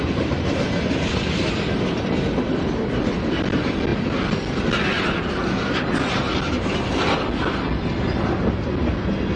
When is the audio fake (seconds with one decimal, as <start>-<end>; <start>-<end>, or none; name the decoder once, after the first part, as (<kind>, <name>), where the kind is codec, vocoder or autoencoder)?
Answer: none